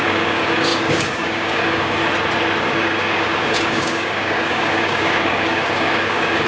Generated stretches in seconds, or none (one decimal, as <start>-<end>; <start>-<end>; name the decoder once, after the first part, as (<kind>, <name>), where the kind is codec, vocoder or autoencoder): 0.0-2.0 (codec, DAC); 2.6-6.5